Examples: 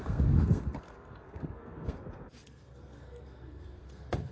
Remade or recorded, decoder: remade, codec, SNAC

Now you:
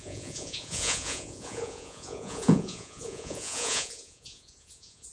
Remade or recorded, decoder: remade, vocoder, Vocos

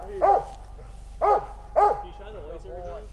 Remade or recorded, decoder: recorded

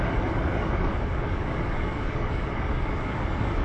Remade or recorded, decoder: remade, codec, DAC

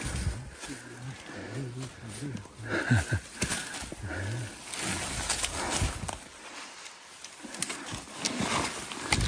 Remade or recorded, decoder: recorded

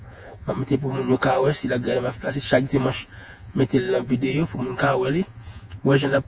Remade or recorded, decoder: remade, vocoder, Vocos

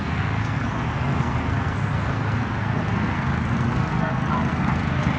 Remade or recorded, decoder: remade, codec, SNAC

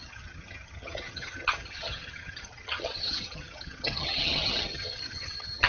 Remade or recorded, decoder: remade, vocoder, HiFi-GAN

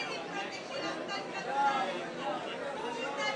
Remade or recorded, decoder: recorded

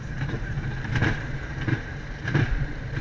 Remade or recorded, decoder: remade, vocoder, BigVGAN v2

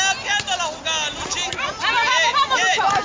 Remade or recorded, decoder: recorded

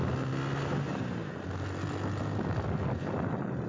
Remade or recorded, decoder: recorded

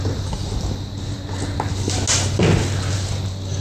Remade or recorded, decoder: recorded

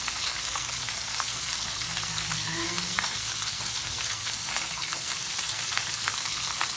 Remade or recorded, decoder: remade, codec, SNAC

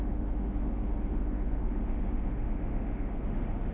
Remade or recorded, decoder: remade, autoencoder, DAC-VAE